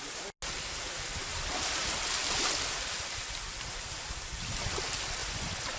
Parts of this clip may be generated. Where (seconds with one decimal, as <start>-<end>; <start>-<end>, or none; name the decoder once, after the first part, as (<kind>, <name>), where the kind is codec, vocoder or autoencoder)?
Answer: 5.2-5.8 (vocoder, Vocos)